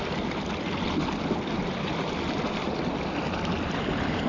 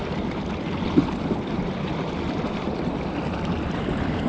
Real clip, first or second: first